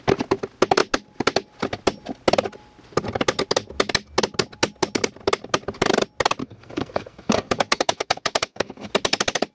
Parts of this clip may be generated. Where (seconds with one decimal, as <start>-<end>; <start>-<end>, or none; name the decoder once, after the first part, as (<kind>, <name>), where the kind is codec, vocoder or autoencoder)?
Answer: 6.4-8.9 (codec, SNAC)